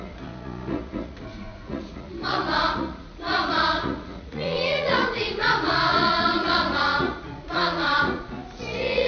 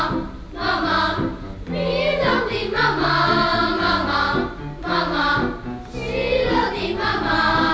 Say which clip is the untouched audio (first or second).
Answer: second